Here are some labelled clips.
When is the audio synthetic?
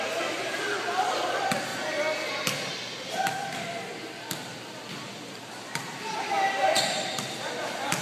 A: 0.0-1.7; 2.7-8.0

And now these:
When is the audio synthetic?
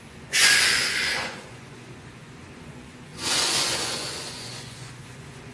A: 0.0-5.5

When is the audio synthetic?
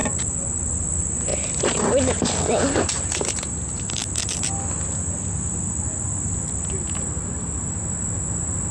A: none